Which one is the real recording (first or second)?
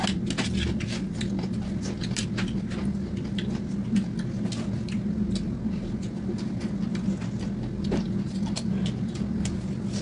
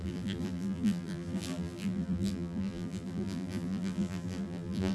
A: first